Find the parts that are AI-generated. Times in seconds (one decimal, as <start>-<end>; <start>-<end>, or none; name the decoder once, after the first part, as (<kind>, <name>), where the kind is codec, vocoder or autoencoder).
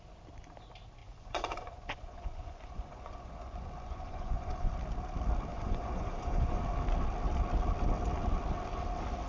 1.0-4.7 (vocoder, Vocos); 5.5-6.6